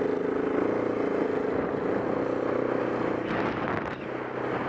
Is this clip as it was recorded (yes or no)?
yes